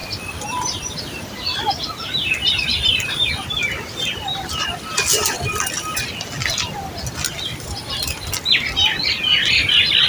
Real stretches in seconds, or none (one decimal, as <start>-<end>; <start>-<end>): 3.3-10.1

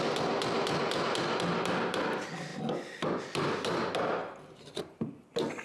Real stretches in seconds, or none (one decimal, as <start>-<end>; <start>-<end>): 0.0-5.6

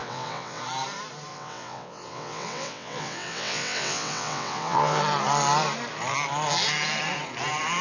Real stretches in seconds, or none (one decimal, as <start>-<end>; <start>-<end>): 0.6-1.3; 5.0-7.8

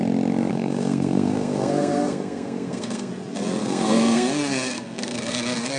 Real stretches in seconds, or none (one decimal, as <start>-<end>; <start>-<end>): 0.0-0.5; 3.1-3.6